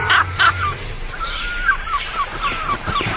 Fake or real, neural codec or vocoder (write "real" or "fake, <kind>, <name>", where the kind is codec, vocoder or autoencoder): fake, vocoder, BigVGAN v2